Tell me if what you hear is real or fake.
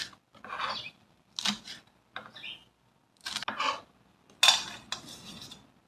real